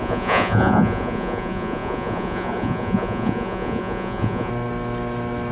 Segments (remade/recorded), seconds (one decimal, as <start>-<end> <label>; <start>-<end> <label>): 0.0-4.5 remade; 4.5-5.5 recorded